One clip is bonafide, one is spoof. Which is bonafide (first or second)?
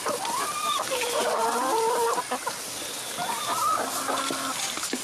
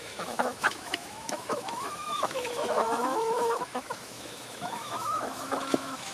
first